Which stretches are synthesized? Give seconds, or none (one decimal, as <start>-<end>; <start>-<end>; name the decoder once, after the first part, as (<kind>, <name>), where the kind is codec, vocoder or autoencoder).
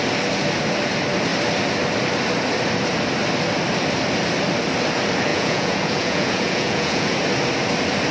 5.3-7.2 (vocoder, Vocos)